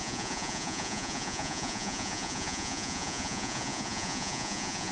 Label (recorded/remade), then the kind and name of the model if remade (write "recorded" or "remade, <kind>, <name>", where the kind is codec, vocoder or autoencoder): remade, vocoder, Vocos